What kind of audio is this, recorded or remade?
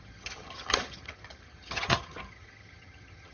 remade